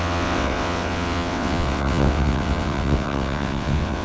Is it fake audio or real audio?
fake